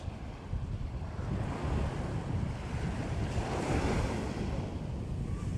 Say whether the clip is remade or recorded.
recorded